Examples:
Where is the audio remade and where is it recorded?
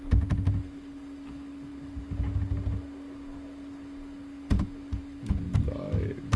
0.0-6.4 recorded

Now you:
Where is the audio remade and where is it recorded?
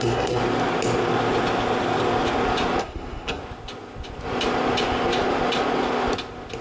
0.0-0.4 remade; 0.4-2.8 recorded; 2.8-3.4 remade; 3.4-6.6 recorded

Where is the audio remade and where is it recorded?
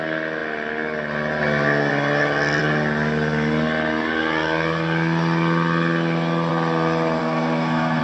0.0-7.2 recorded; 7.2-8.0 remade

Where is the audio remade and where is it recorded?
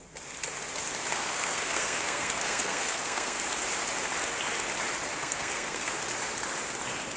0.0-1.1 recorded; 1.1-3.4 remade; 3.4-5.1 recorded; 5.1-5.9 remade; 5.9-7.2 recorded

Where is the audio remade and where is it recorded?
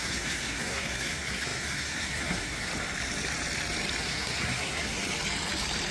0.0-2.7 remade; 2.7-4.0 recorded; 4.0-5.0 remade; 5.0-5.9 recorded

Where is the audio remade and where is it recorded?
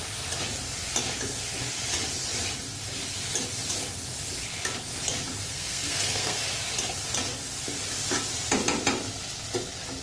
0.0-5.5 recorded; 5.5-6.4 remade; 6.4-10.0 recorded